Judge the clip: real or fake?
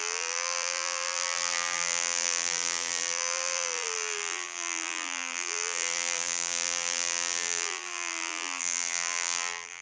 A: fake